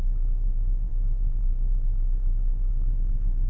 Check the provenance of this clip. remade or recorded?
remade